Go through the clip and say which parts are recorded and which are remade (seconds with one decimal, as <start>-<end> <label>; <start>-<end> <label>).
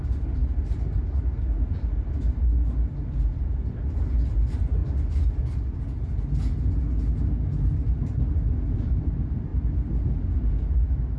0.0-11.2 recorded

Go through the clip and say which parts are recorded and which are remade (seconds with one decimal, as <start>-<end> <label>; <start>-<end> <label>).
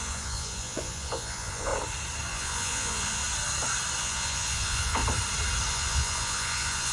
0.0-1.7 remade; 1.7-2.3 recorded; 2.3-3.2 remade; 3.2-4.0 recorded; 4.0-5.0 remade; 5.0-5.7 recorded; 5.7-6.9 remade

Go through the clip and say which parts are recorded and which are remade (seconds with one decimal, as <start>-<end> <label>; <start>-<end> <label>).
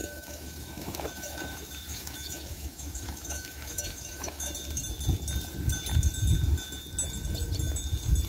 0.0-4.5 remade; 4.5-8.3 recorded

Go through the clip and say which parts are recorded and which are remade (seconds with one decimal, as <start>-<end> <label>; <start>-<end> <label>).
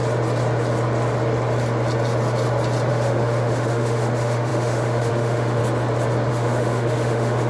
0.0-2.9 recorded; 2.9-5.6 remade; 5.6-6.3 recorded; 6.3-7.5 remade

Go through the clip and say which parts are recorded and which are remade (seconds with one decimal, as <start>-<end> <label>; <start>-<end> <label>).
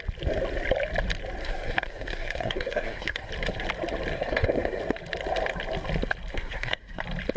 0.0-1.4 recorded; 1.4-3.3 remade; 3.3-4.1 recorded; 4.1-4.8 remade; 4.8-6.3 recorded; 6.3-7.0 remade; 7.0-7.4 recorded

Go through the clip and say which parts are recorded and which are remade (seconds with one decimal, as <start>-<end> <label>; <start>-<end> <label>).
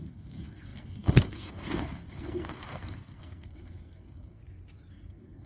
0.0-4.4 remade; 4.4-4.9 recorded; 4.9-5.5 remade